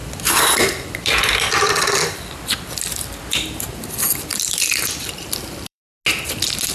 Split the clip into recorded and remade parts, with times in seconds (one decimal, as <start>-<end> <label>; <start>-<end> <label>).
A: 0.0-3.1 remade; 3.1-4.3 recorded; 4.3-5.8 remade; 5.8-6.7 recorded